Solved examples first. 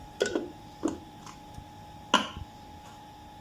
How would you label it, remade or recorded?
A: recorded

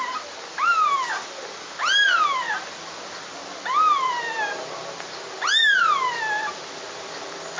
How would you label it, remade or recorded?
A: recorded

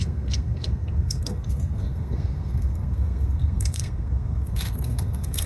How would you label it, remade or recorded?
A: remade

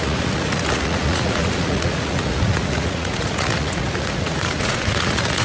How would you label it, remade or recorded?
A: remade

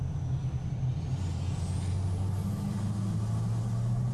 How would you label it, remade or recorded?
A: recorded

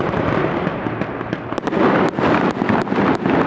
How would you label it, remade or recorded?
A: recorded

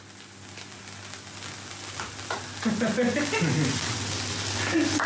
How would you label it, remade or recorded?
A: recorded